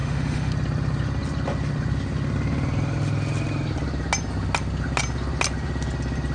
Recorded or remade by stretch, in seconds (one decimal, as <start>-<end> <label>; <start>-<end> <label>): 0.0-0.5 remade; 0.5-6.3 recorded